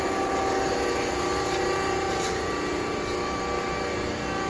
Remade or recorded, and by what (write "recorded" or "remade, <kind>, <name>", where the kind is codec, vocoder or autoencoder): recorded